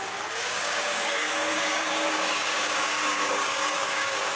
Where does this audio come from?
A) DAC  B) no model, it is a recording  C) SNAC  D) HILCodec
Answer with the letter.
A